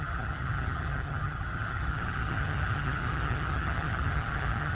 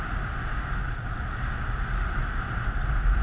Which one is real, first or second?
second